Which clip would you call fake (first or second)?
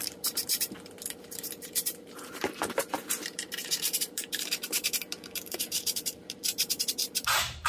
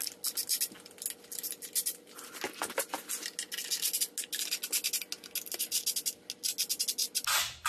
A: first